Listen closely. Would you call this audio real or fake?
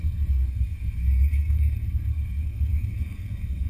fake